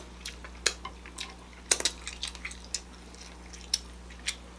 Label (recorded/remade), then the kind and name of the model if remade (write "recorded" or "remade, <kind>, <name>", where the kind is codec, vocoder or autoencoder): recorded